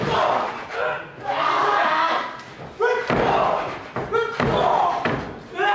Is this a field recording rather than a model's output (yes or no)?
yes